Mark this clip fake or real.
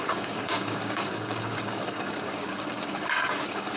fake